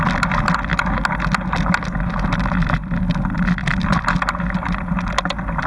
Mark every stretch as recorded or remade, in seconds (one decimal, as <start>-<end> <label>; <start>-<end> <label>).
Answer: 0.0-5.7 recorded